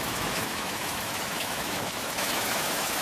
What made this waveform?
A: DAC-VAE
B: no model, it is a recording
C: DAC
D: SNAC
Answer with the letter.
A